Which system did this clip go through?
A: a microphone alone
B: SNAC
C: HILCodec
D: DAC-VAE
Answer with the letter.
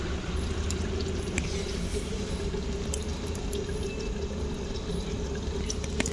A